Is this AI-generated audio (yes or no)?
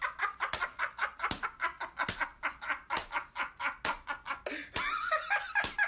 no